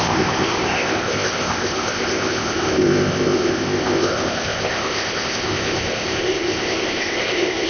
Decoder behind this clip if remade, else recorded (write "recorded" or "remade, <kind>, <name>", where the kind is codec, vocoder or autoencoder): remade, codec, ZipCodec